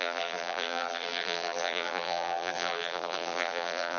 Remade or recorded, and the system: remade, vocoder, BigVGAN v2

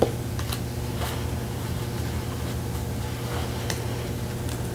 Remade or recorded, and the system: recorded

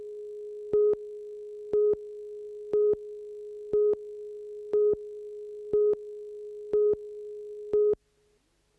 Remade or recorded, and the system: recorded